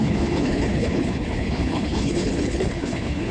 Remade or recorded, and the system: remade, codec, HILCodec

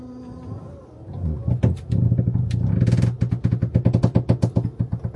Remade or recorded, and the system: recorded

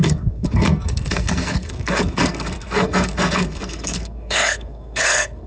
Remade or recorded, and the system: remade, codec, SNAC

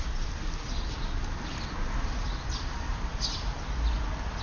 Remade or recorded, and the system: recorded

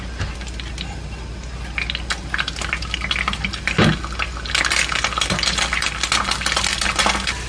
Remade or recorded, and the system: recorded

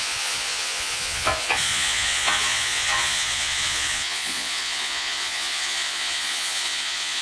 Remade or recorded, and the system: remade, vocoder, Vocos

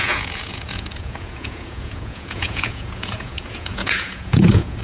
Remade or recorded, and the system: remade, vocoder, Vocos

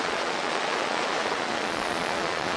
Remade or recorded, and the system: remade, vocoder, Vocos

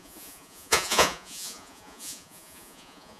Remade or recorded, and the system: remade, vocoder, Vocos